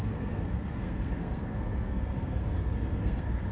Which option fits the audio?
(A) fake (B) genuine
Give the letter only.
A